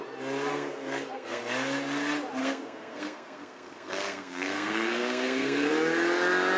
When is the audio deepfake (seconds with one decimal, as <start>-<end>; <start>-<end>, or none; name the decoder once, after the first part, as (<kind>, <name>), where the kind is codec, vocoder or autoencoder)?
0.5-1.4 (codec, SNAC); 2.4-5.7